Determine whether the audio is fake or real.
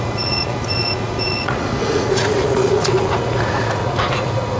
fake